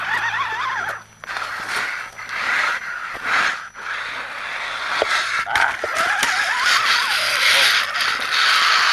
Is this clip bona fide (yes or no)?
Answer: yes